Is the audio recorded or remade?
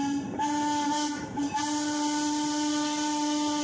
recorded